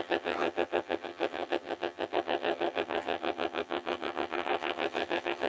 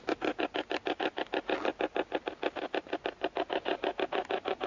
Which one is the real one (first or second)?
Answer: second